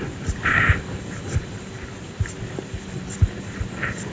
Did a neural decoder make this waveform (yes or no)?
yes